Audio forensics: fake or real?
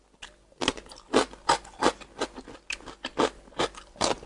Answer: real